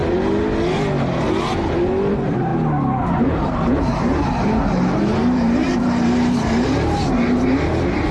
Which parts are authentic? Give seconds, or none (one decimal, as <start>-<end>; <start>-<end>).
0.0-2.1; 2.5-3.2